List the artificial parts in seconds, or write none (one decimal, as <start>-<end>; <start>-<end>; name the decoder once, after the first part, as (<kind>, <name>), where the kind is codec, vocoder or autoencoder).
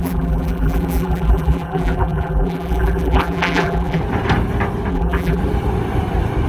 0.0-4.0 (vocoder, BigVGAN v2); 4.9-5.4